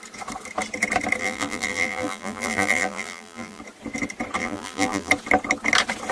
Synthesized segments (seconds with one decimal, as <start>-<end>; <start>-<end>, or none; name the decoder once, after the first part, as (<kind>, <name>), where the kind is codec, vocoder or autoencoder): 1.2-3.6 (vocoder, BigVGAN v2); 4.4-5.1